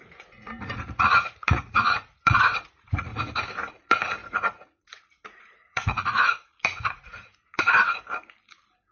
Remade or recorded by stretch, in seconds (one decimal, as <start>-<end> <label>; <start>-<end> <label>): 0.0-3.1 remade; 3.1-3.6 recorded; 3.6-7.6 remade; 7.6-8.9 recorded